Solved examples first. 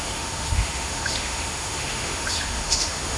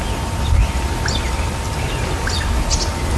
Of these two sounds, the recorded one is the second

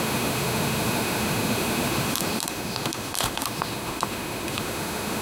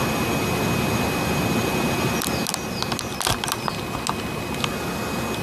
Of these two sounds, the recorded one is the second